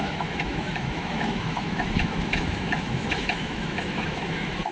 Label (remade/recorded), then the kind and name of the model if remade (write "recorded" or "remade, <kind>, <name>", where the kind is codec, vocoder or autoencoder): remade, autoencoder, DAC-VAE